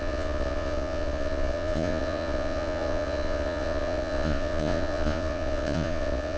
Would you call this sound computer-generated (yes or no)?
yes